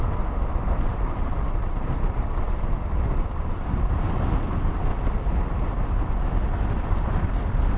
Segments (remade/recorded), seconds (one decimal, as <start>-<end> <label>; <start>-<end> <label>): 0.0-1.3 recorded; 1.3-1.9 remade; 1.9-7.8 recorded